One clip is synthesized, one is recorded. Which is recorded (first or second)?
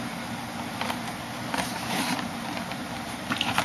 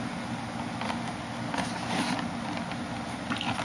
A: second